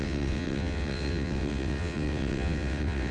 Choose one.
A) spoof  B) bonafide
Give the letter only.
A